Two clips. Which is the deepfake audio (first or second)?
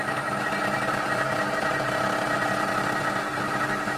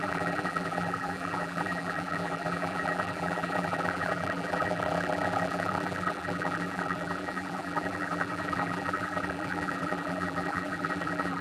second